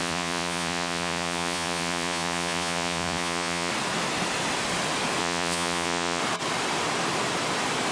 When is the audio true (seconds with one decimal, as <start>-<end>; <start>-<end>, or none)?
3.7-5.2; 6.2-7.9